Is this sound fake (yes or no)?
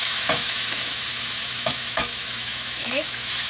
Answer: yes